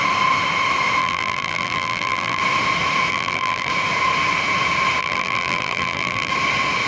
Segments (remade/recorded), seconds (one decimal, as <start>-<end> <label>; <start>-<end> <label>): 0.0-1.0 recorded; 1.0-2.4 remade; 2.4-3.1 recorded; 3.1-3.7 remade; 3.7-5.0 recorded; 5.0-6.3 remade; 6.3-6.9 recorded